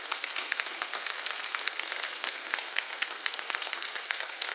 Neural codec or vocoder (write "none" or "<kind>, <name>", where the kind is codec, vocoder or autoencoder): codec, SNAC